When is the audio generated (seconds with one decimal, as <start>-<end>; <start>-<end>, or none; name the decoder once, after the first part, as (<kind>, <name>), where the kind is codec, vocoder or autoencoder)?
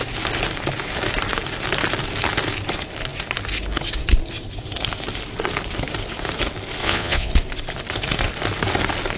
6.8-7.3 (vocoder, Vocos)